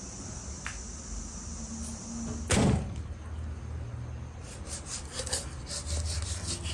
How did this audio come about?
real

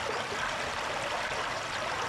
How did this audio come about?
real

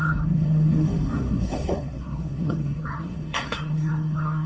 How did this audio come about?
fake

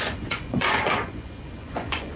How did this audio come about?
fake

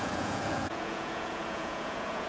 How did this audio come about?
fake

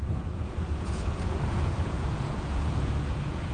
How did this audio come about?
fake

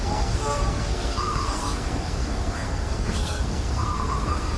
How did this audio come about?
fake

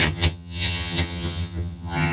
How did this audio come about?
fake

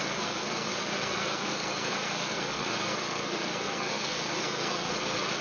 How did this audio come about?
fake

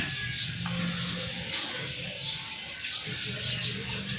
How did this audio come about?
real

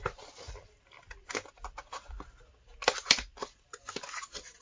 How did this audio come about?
real